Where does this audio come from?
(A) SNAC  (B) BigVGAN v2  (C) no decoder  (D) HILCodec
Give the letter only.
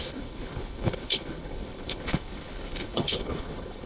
D